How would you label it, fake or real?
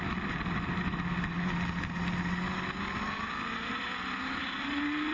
real